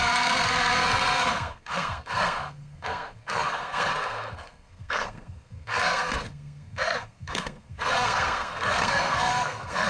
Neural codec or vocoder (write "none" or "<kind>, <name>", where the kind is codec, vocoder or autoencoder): codec, SNAC